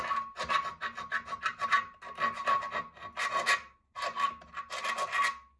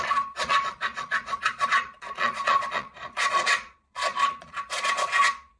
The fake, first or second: second